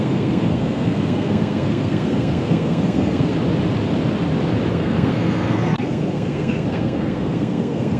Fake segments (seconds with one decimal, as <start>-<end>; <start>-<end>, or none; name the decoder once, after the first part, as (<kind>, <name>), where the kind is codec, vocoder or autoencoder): 0.0-3.3 (codec, SNAC); 4.7-8.0